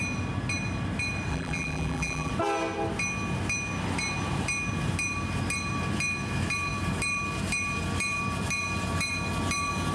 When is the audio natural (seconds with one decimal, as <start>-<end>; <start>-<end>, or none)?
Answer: 0.0-1.3; 2.3-9.9